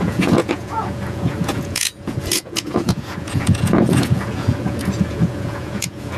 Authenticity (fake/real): fake